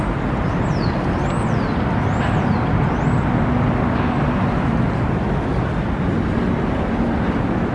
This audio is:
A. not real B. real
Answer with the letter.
B